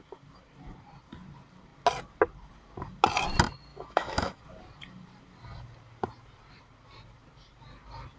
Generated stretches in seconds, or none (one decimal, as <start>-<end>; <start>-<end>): 3.7-4.4